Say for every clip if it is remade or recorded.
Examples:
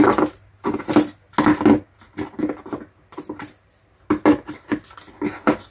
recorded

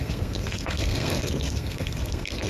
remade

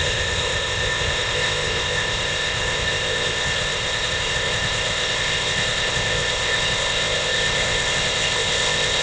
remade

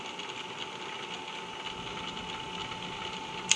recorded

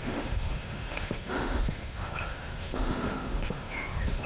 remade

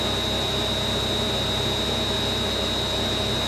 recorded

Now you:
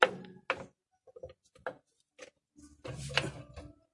recorded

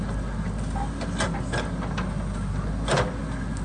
recorded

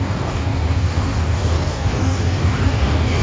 remade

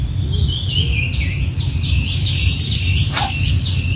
recorded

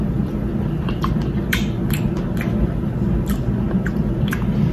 recorded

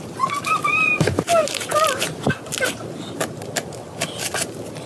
recorded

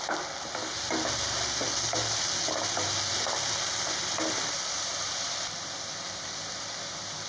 recorded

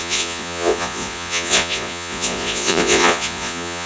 remade